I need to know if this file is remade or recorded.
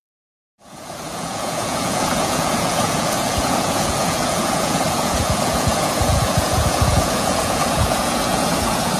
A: remade